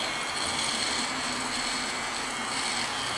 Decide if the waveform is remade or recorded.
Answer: remade